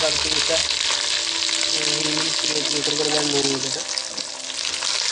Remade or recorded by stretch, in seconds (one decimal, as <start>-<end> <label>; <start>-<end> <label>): 0.0-5.1 recorded